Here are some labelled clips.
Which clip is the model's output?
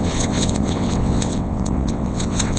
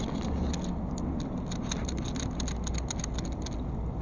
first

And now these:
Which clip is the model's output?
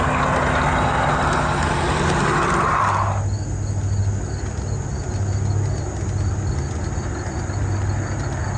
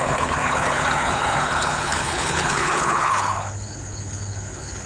second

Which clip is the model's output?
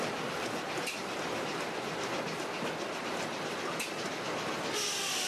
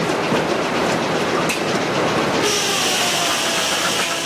second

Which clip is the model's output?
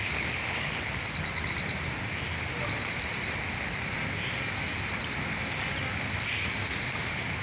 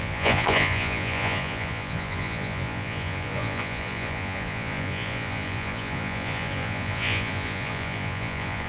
second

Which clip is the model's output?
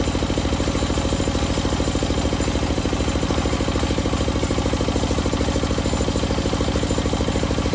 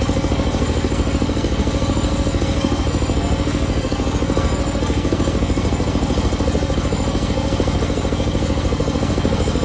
second